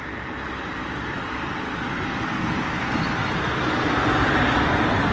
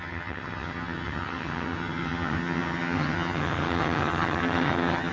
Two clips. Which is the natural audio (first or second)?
first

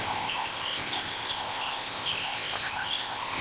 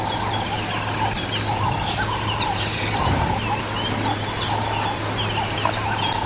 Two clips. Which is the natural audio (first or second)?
second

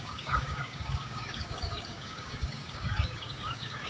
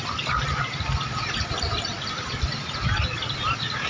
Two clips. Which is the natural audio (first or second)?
second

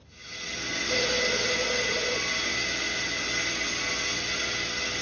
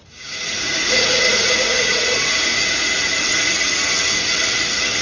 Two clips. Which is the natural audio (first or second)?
first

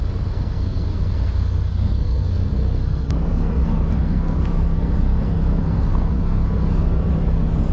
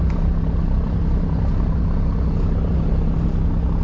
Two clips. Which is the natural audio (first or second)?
second